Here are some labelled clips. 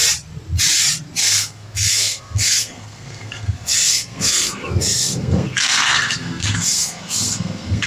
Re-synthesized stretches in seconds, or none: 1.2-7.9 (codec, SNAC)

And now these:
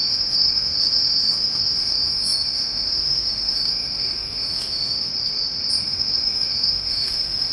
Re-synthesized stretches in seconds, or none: 0.0-5.1 (autoencoder, DAC-VAE); 5.7-7.5

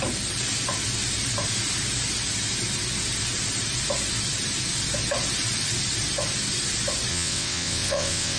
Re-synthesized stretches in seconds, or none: 7.1-8.4 (vocoder, WaveNeXt)

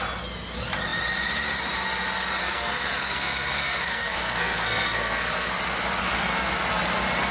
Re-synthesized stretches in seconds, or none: 2.4-5.5 (codec, SNAC); 6.0-6.5

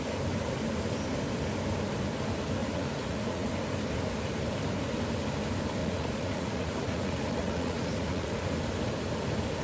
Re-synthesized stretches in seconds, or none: 2.6-3.5 (vocoder, Vocos); 5.8-8.3

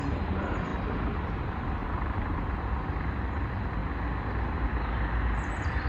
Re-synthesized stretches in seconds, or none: 1.8-2.6 (vocoder, BigVGAN v2)